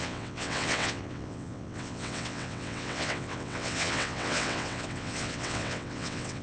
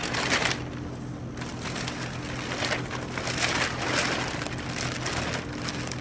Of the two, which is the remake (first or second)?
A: first